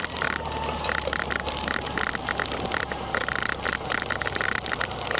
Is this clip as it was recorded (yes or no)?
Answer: yes